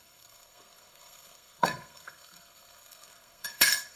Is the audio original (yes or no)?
no